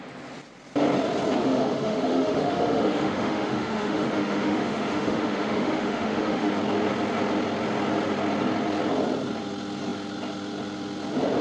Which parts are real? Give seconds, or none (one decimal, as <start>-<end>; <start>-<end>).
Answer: 0.0-1.4; 6.5-11.4